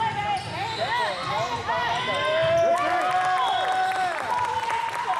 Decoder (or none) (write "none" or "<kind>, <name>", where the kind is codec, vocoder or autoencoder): none